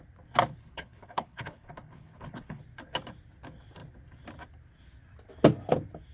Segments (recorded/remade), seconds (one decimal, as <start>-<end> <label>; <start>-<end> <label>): 0.0-0.6 recorded; 0.6-2.6 remade; 2.6-6.1 recorded